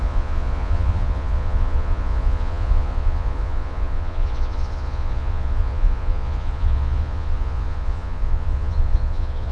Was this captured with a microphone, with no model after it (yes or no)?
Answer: no